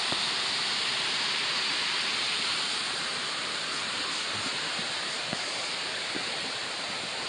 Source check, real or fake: fake